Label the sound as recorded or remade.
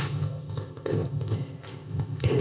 remade